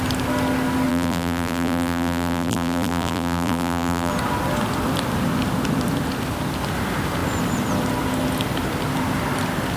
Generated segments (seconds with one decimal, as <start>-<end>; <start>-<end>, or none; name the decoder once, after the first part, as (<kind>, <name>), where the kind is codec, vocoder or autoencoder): 0.9-4.1 (vocoder, BigVGAN v2)